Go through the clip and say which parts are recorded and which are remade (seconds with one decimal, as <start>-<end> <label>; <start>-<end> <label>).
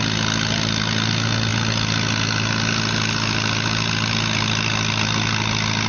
0.0-5.9 recorded